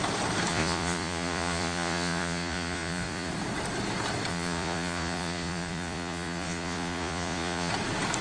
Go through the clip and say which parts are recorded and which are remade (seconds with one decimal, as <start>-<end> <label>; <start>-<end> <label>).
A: 0.0-0.5 recorded; 0.5-3.3 remade; 3.3-4.3 recorded; 4.3-7.7 remade; 7.7-8.2 recorded